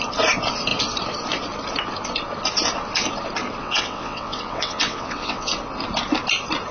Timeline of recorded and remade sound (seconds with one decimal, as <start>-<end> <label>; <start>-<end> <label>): 0.0-3.6 recorded; 3.6-5.5 remade; 5.5-6.7 recorded